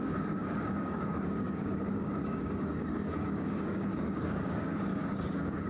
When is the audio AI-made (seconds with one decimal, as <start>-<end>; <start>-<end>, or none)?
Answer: 0.0-5.7